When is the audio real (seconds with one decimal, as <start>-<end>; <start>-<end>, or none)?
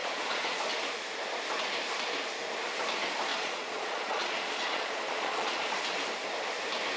0.6-3.3; 5.7-7.0